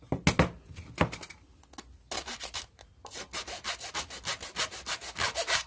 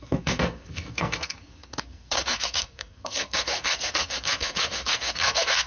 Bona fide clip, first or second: first